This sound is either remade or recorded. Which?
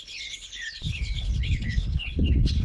remade